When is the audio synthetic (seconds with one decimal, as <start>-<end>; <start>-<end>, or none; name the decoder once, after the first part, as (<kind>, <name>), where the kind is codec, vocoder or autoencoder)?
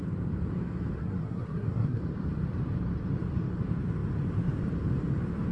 1.0-2.0 (codec, SNAC)